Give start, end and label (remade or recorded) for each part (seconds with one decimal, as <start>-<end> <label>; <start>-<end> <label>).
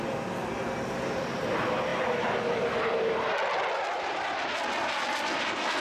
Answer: 0.0-5.8 recorded